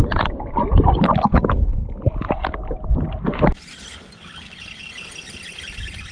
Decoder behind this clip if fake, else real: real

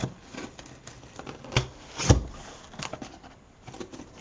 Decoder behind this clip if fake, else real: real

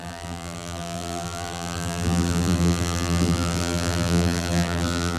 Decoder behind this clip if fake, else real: fake, vocoder, BigVGAN v2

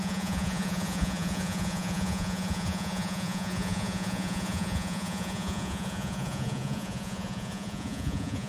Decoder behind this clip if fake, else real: fake, vocoder, Vocos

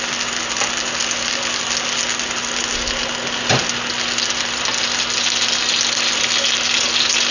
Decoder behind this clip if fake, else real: real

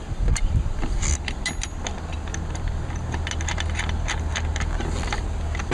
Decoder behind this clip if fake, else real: real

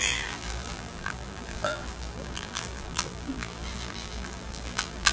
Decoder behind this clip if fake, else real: fake, vocoder, BigVGAN v2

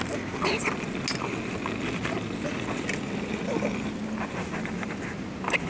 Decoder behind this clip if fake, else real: real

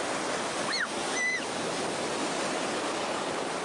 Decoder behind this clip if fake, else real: real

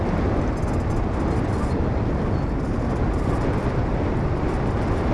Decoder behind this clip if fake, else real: real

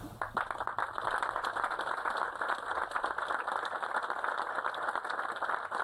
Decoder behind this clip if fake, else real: real